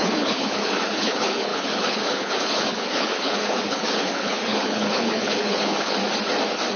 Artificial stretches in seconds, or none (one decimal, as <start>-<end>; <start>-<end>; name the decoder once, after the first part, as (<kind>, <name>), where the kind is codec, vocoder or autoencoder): 0.0-6.0 (codec, HILCodec)